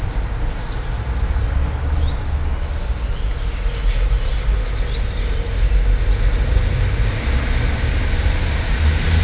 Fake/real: real